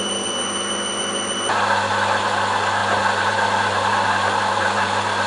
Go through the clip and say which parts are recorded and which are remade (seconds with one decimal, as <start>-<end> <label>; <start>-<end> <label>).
0.0-2.8 recorded; 2.8-5.3 remade